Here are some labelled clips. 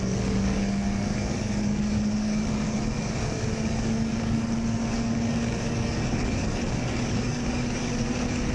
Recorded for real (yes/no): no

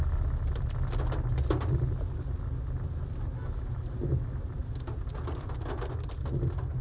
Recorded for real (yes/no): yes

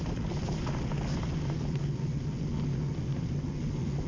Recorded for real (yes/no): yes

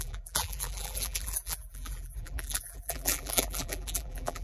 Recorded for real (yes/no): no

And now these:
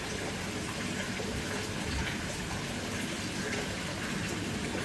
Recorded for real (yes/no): yes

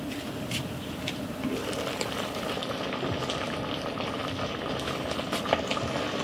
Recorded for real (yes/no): no